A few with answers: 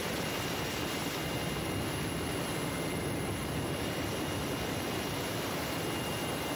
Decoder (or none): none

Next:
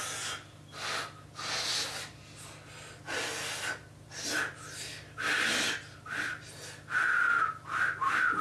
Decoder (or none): none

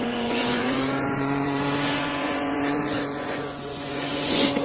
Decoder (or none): vocoder, Vocos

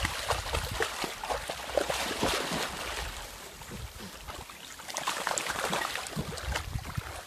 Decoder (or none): none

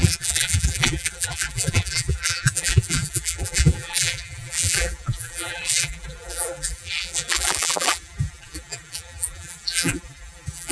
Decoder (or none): vocoder, BigVGAN v2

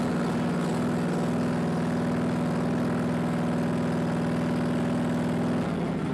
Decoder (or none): none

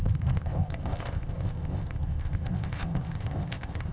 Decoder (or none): codec, ZipCodec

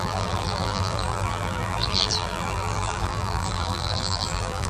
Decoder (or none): vocoder, BigVGAN v2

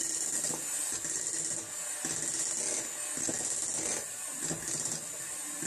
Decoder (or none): none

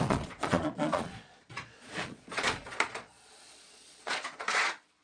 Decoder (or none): vocoder, Vocos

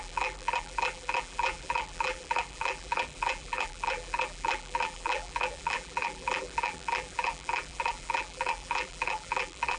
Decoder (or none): vocoder, BigVGAN v2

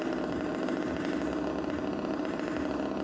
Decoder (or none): none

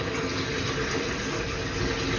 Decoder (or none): none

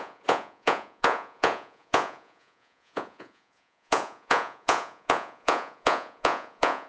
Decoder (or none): vocoder, Vocos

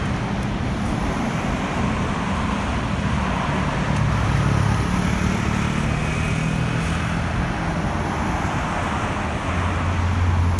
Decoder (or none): none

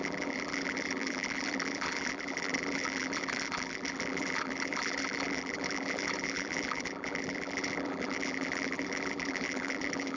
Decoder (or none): vocoder, BigVGAN v2